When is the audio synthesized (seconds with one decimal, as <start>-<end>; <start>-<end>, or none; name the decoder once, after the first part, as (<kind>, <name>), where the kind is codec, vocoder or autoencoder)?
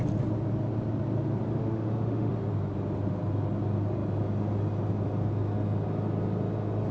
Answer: 1.6-2.3 (autoencoder, DAC-VAE)